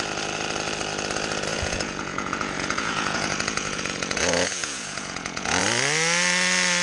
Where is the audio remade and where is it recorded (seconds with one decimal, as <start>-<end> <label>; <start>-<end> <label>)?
0.0-1.5 recorded; 1.5-5.6 remade; 5.6-6.8 recorded